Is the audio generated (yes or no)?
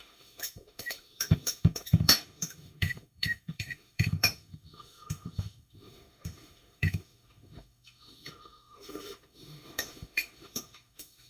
yes